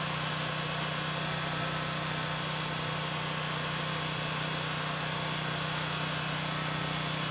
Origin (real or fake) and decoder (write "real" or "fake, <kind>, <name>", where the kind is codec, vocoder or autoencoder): real